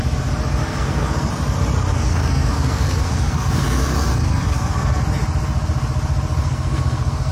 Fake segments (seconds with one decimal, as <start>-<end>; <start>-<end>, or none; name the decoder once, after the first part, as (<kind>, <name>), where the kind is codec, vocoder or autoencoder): 0.6-1.3 (codec, SNAC); 1.9-5.0; 6.4-7.3